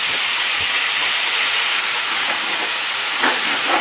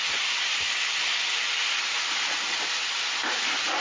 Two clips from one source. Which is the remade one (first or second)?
first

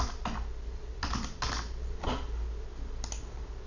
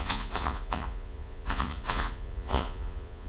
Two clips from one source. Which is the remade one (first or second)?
second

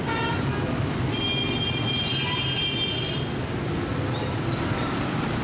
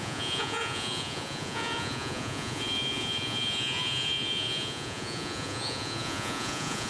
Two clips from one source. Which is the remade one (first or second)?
second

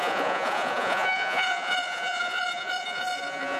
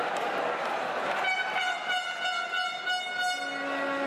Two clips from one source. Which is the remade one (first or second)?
first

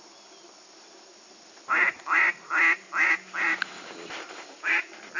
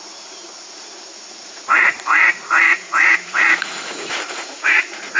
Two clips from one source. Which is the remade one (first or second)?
second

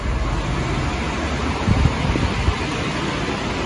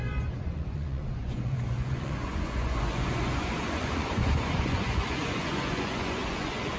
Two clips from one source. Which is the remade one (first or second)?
second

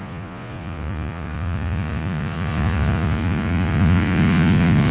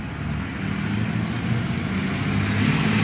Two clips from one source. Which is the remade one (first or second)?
first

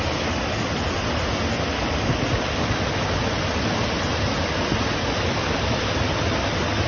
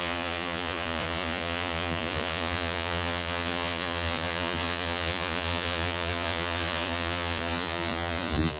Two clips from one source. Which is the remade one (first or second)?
second